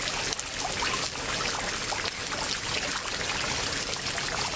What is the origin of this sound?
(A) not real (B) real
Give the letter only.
B